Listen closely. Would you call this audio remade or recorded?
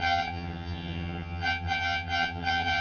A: remade